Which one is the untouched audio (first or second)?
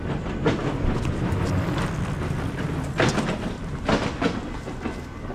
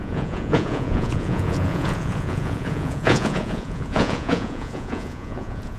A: first